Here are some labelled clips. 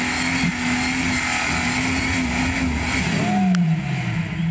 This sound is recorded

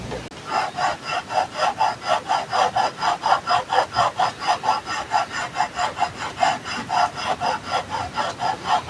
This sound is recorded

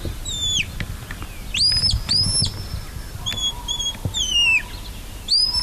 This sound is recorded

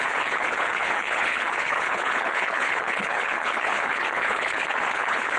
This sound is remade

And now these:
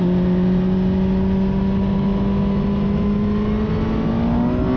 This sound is recorded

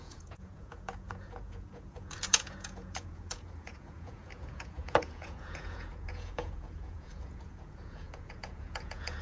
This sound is remade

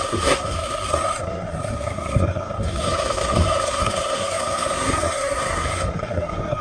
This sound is remade